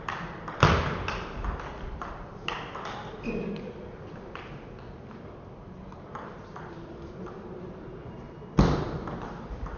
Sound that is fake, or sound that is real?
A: real